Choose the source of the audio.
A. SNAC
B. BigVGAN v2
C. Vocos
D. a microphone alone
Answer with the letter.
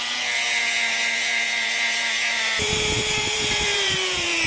C